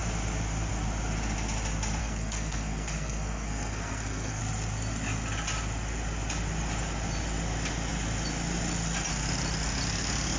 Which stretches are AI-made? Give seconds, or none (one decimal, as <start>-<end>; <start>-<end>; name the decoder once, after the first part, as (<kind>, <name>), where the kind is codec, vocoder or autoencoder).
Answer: 2.0-4.4 (codec, SNAC)